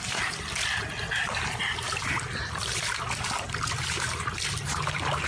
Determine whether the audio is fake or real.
real